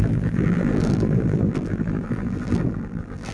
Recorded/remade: remade